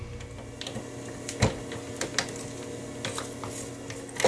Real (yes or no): yes